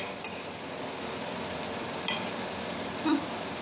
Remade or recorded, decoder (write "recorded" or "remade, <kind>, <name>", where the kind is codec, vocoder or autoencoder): recorded